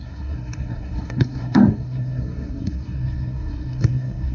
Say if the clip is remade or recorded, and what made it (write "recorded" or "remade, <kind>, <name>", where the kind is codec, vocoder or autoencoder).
remade, codec, SNAC